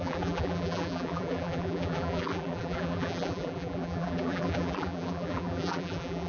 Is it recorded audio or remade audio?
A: remade